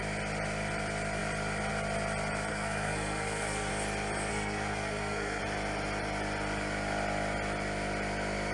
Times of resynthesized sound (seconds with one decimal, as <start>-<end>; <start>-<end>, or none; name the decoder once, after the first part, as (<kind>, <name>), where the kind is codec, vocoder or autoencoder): 2.5-3.7 (codec, SNAC); 4.3-5.4